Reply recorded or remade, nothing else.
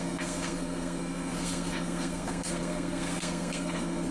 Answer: remade